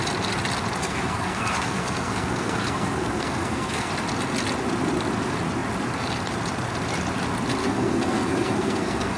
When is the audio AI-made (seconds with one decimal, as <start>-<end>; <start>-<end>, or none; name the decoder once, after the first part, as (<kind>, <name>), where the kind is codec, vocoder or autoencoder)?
0.8-3.9 (codec, SNAC); 7.6-9.2